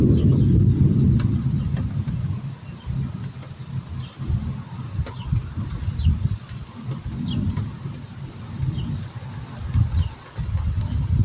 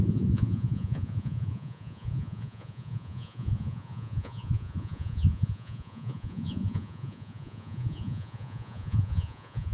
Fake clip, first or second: second